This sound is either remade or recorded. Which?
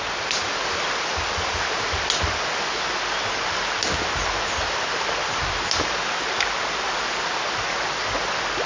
recorded